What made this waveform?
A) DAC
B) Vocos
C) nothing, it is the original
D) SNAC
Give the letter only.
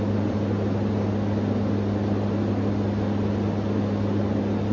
C